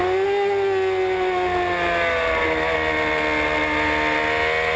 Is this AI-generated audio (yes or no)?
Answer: no